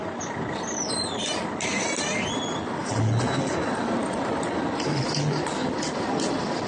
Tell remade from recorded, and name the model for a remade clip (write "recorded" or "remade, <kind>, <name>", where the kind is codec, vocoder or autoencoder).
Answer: recorded